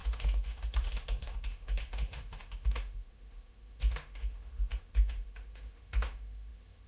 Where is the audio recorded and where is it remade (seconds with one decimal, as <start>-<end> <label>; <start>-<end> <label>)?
0.0-6.9 remade